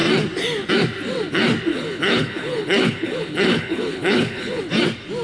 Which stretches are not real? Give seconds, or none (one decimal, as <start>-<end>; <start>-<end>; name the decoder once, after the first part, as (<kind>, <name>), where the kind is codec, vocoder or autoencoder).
1.7-4.6 (codec, HILCodec)